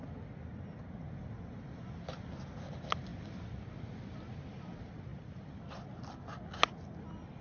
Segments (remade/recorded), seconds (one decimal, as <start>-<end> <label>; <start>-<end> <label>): 0.0-7.4 recorded